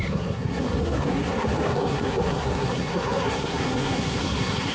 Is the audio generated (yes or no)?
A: yes